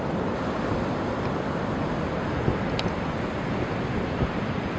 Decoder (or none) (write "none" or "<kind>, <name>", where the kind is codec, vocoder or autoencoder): none